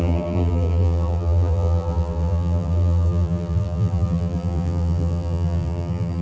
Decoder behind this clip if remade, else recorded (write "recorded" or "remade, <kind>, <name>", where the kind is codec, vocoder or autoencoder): remade, vocoder, BigVGAN v2